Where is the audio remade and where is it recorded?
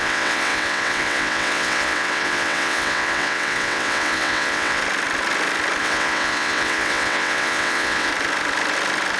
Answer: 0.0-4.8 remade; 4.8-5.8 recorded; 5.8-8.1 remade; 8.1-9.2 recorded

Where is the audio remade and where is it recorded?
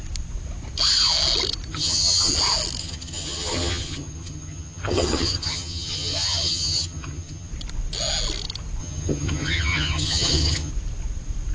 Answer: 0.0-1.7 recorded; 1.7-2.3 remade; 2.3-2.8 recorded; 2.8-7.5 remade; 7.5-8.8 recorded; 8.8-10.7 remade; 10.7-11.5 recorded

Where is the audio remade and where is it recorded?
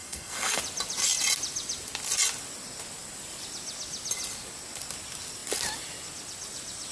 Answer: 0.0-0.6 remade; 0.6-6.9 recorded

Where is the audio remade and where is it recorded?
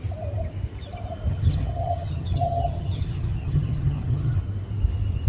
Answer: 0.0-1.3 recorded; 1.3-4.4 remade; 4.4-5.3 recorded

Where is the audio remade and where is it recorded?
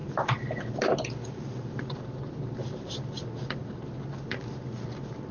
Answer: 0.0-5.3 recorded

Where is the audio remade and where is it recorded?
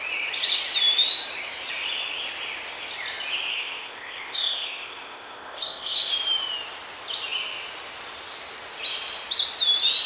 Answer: 0.0-3.5 recorded; 3.5-6.1 remade; 6.1-10.1 recorded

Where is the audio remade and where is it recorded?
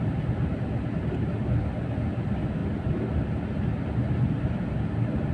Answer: 0.0-5.3 recorded